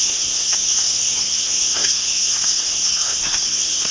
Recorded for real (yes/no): no